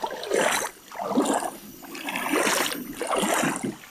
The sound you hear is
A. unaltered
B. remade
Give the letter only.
A